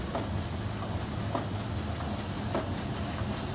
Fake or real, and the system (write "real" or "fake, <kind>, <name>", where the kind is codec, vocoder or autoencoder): real